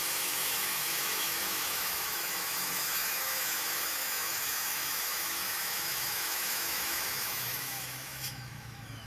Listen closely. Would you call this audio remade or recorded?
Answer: remade